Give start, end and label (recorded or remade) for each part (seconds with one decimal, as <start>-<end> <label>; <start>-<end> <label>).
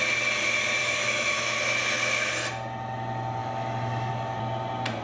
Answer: 0.0-0.8 recorded; 0.8-1.6 remade; 1.6-3.4 recorded; 3.4-4.1 remade; 4.1-5.0 recorded